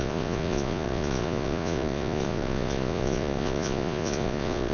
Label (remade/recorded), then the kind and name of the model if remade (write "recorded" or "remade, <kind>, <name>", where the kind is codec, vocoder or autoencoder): remade, vocoder, Vocos